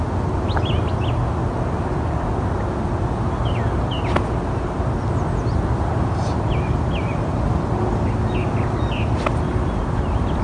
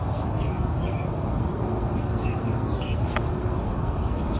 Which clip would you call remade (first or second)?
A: second